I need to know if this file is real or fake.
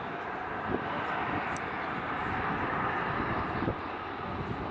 real